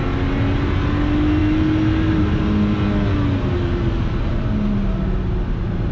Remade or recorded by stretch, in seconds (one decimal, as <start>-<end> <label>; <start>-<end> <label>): 0.0-5.9 recorded